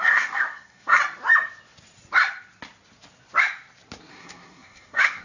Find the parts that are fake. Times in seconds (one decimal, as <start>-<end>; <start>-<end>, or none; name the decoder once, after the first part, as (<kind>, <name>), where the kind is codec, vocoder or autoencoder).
0.0-1.0 (codec, SNAC); 4.1-5.2